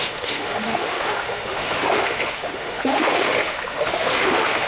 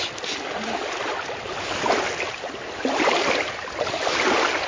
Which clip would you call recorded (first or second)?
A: second